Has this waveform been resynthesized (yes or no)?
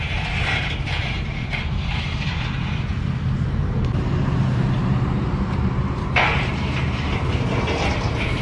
yes